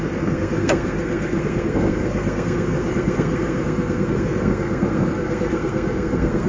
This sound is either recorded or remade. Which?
remade